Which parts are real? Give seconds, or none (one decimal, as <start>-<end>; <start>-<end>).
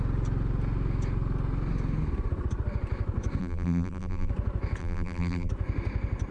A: 0.0-3.4; 4.3-4.8; 5.5-6.3